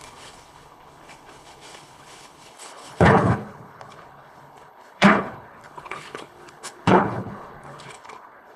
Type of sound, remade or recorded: remade